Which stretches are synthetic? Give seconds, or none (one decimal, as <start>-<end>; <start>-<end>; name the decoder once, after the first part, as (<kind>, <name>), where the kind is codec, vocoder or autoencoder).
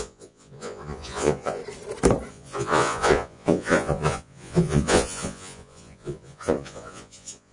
0.0-1.6 (vocoder, Vocos); 2.3-7.5